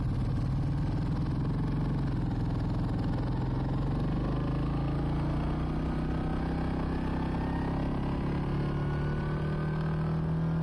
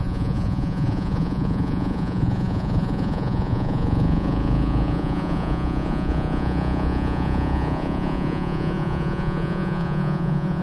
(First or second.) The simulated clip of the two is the second